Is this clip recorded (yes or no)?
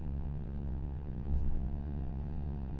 no